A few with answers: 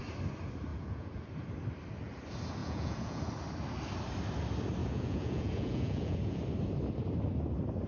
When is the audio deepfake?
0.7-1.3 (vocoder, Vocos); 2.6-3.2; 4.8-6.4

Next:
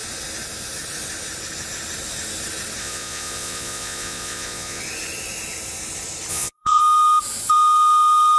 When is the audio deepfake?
2.8-4.8 (vocoder, Vocos); 6.3-6.8

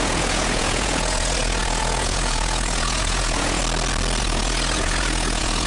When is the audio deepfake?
0.0-3.6 (vocoder, Vocos); 4.2-5.7